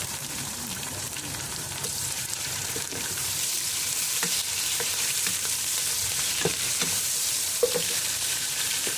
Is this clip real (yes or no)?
no